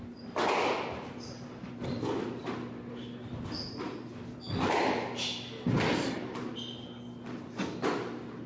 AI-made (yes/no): no